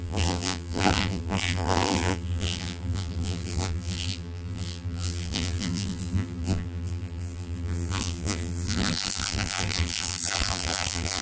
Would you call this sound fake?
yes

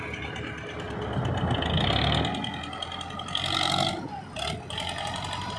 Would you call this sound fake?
no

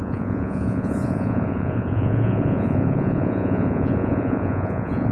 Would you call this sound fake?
yes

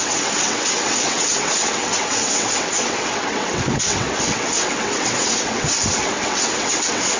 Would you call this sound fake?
yes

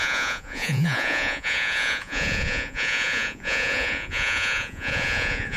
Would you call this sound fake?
yes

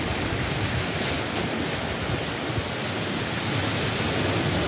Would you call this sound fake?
no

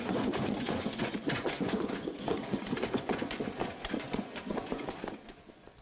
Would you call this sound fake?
yes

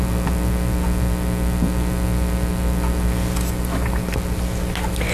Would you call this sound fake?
no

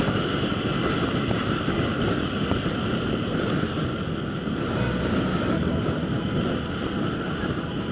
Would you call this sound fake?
no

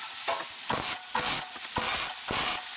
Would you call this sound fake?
no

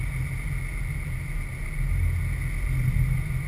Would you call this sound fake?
no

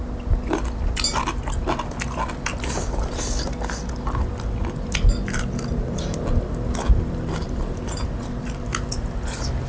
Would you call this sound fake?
no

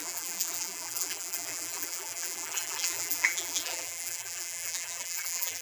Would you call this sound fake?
yes